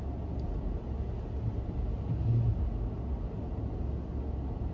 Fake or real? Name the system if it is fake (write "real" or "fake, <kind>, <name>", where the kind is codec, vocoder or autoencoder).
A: real